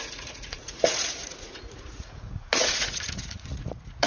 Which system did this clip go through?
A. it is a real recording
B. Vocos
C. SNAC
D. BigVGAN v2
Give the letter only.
B